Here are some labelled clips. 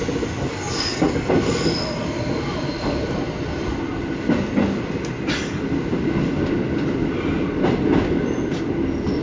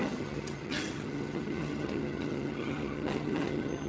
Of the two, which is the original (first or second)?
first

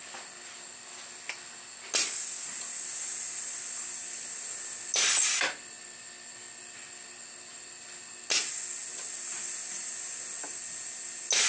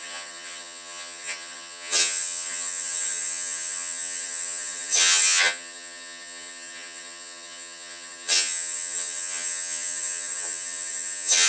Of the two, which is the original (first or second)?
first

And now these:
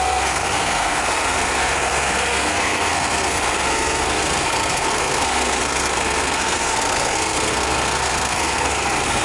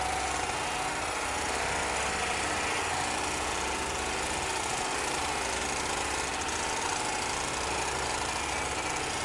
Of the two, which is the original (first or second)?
second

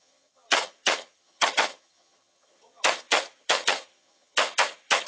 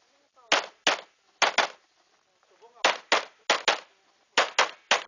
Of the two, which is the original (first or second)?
second